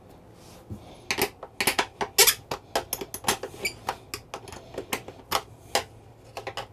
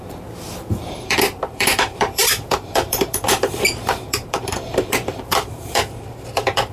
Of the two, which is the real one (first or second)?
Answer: first